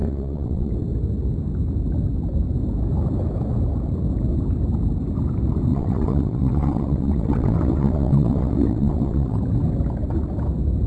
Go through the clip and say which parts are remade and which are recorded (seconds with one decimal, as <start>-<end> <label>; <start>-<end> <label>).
0.0-0.7 remade; 0.7-5.7 recorded; 5.7-9.4 remade; 9.4-10.9 recorded